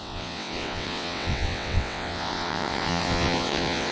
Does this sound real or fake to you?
fake